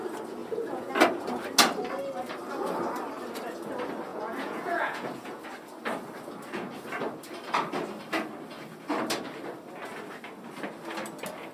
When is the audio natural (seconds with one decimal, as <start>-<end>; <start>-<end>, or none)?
0.0-0.4; 0.9-4.1; 5.4-11.5